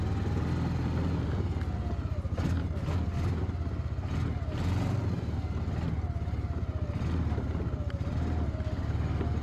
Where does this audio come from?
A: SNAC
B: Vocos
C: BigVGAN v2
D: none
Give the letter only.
D